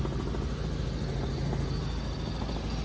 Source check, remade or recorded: recorded